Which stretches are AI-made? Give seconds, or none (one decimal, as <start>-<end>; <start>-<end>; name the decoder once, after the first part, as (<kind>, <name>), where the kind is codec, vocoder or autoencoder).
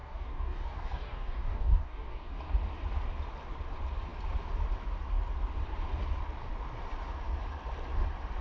0.0-2.4 (codec, DAC)